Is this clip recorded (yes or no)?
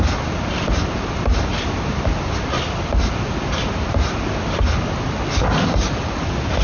yes